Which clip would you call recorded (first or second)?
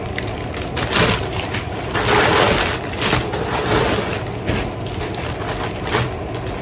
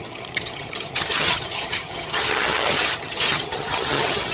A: first